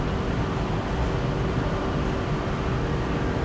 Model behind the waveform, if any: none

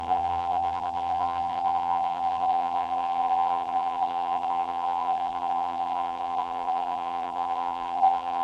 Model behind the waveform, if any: vocoder, BigVGAN v2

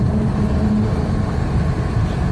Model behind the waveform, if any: none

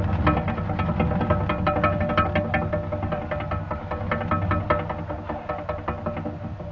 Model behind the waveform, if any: none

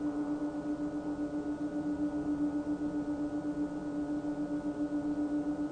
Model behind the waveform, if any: none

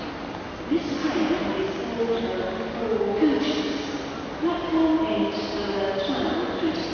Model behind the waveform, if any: none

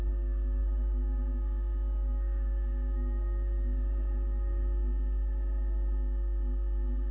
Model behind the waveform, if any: codec, SNAC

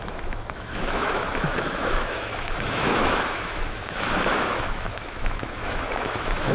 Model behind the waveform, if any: autoencoder, DAC-VAE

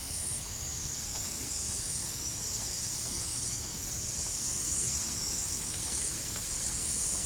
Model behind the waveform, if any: codec, SNAC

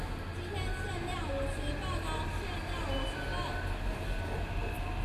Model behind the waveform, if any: none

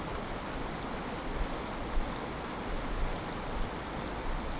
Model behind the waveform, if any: none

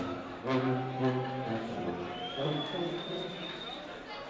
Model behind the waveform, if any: none